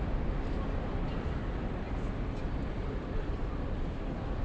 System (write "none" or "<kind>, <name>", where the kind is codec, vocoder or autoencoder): none